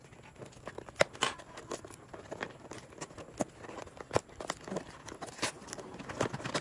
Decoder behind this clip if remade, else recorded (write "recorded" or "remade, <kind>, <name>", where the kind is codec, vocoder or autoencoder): recorded